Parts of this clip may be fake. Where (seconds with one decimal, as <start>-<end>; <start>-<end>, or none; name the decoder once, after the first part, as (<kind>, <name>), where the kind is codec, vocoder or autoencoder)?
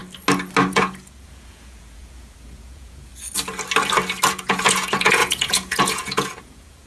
0.7-3.1 (vocoder, Vocos); 4.3-6.9